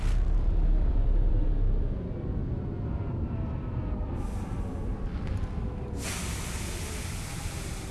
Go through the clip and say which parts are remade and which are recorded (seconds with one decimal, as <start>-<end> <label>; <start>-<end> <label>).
0.0-1.5 remade; 1.5-3.8 recorded; 3.8-7.9 remade